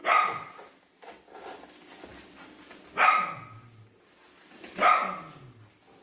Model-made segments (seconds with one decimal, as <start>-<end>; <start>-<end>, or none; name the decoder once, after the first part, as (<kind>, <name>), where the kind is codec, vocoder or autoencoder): none